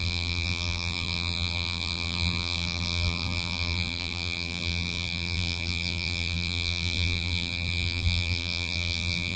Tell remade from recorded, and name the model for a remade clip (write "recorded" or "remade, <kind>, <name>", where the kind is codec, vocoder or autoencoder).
remade, vocoder, BigVGAN v2